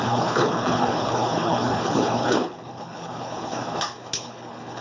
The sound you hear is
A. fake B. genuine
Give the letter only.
A